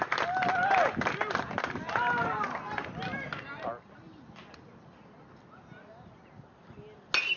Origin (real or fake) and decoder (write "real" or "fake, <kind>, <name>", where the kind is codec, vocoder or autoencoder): real